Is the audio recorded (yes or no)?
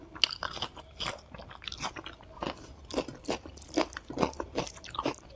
yes